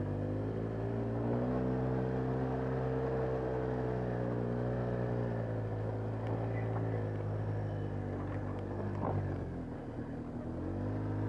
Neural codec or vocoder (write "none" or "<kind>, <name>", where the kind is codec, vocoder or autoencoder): none